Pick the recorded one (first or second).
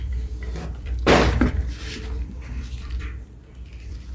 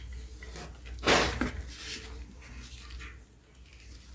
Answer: second